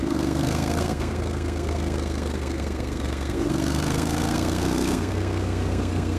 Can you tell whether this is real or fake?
fake